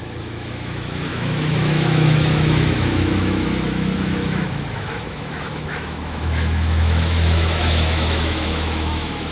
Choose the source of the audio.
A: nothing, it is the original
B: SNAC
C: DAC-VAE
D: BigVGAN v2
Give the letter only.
C